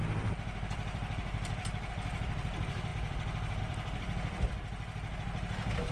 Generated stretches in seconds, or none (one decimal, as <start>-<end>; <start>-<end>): 0.0-5.9